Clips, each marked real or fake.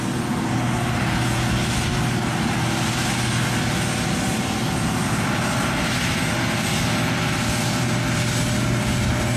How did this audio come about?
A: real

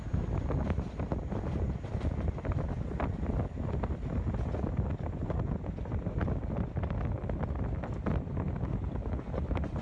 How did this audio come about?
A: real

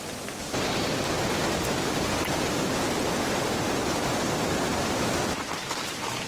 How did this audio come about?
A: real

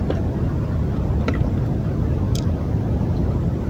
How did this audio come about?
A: real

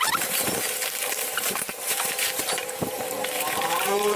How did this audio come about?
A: fake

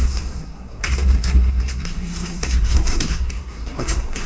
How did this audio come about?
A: fake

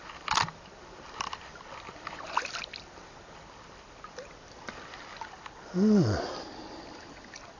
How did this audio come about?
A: real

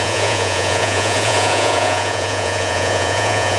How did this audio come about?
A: fake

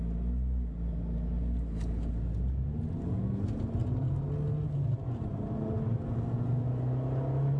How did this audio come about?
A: real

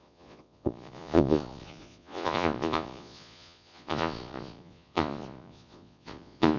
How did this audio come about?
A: fake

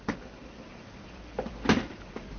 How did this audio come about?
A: fake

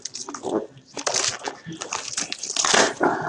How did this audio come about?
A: real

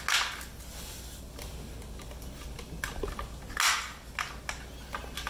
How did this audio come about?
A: real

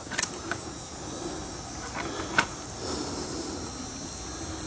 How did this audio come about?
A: real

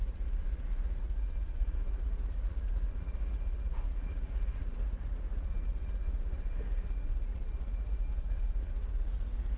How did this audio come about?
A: fake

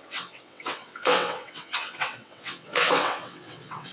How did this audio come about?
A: fake